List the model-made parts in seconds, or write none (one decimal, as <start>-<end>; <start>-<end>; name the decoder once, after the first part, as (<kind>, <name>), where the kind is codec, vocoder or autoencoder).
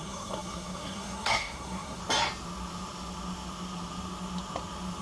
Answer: 0.0-2.0 (codec, SNAC)